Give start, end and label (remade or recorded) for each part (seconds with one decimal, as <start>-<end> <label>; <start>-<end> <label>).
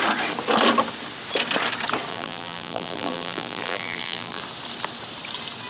0.0-2.1 recorded; 2.1-4.4 remade; 4.4-5.7 recorded